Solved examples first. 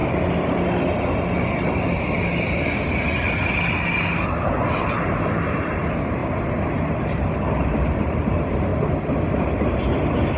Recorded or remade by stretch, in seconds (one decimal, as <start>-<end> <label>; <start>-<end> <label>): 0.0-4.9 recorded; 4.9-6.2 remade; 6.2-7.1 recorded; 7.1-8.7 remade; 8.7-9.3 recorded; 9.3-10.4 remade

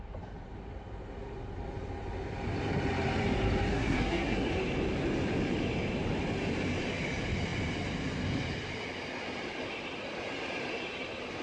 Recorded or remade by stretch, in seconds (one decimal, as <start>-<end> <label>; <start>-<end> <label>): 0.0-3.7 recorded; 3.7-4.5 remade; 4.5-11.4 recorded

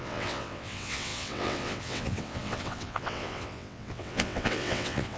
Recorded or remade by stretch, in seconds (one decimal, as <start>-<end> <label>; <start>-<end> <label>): 0.0-5.2 remade

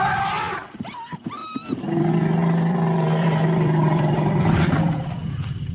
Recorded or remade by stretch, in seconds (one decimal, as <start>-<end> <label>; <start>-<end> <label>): 0.0-1.4 recorded; 1.4-4.8 remade; 4.8-5.7 recorded

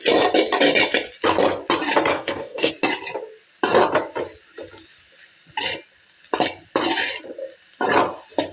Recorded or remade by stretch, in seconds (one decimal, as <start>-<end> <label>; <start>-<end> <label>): 0.0-2.1 recorded; 2.1-2.7 remade; 2.7-8.5 recorded

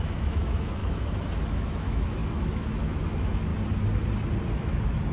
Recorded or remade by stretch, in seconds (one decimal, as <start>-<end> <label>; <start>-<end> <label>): 0.0-3.5 remade; 3.5-4.5 recorded; 4.5-5.1 remade

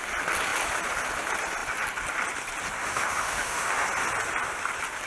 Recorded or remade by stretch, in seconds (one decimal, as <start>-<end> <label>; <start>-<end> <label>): 0.0-2.8 recorded; 2.8-3.7 remade; 3.7-5.1 recorded

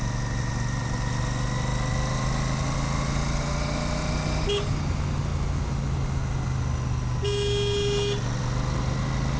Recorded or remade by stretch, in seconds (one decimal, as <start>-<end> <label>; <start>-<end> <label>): 0.0-9.4 recorded